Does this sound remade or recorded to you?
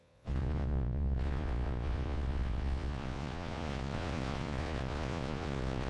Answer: remade